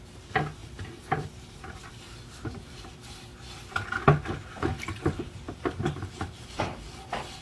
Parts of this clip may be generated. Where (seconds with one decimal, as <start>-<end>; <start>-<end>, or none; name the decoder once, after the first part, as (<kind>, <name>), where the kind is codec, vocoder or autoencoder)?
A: 0.0-3.3 (vocoder, BigVGAN v2); 4.6-7.4